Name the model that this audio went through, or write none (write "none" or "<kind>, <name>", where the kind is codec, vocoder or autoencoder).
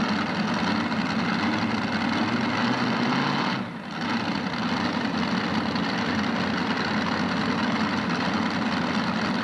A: none